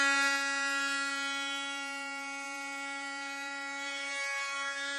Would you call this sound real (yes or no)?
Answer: no